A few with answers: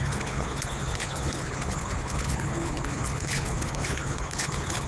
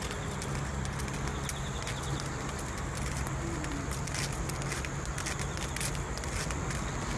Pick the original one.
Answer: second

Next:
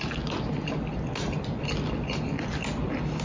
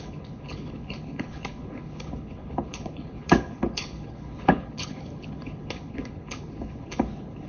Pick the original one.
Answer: first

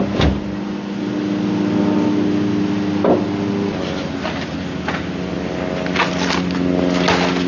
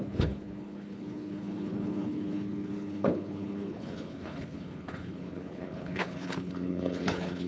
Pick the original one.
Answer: first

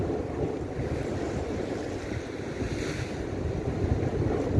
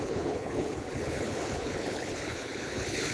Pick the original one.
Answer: first